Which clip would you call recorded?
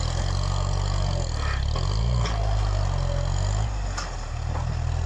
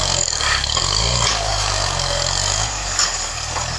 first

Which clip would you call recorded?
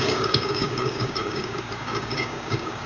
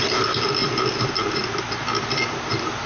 second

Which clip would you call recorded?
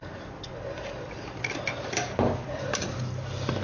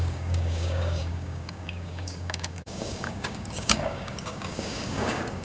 first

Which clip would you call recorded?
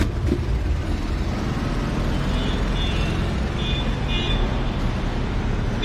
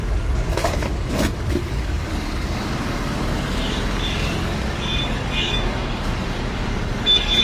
first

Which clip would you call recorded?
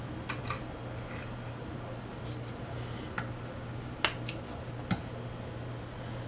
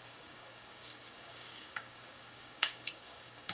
first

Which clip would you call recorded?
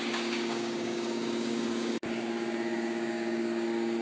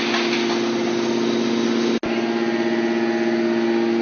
second